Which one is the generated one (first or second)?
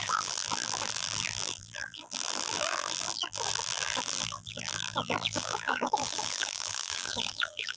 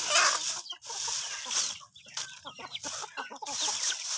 first